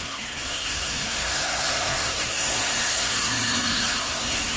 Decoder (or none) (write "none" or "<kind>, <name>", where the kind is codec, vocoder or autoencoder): codec, SNAC